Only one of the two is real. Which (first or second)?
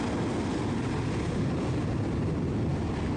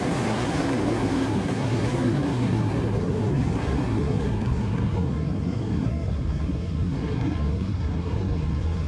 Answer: first